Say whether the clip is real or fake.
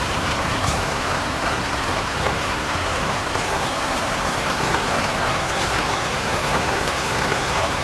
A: fake